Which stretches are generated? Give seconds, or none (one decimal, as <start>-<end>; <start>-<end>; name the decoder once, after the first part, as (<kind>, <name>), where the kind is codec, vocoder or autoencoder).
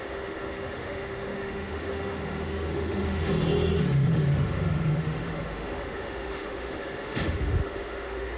0.0-3.3 (autoencoder, DAC-VAE); 3.8-8.4